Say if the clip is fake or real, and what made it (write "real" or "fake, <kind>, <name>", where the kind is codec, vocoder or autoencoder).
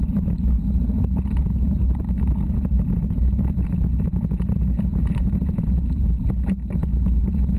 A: fake, vocoder, BigVGAN v2